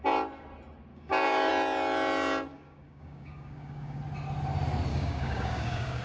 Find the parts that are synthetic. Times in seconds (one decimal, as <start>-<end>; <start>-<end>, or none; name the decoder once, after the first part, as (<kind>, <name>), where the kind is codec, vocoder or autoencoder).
0.9-1.5 (codec, DAC); 2.5-4.0; 4.9-6.0